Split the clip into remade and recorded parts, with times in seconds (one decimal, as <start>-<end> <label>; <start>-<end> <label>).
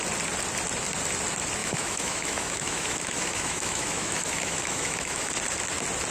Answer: 0.0-1.6 recorded; 1.6-5.3 remade; 5.3-6.1 recorded